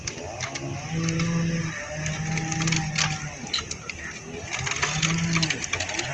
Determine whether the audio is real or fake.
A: real